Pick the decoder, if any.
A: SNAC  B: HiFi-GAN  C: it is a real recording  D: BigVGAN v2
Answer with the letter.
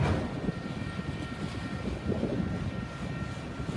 C